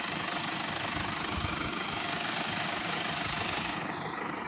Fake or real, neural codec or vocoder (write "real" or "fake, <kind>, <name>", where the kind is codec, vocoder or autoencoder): fake, codec, DAC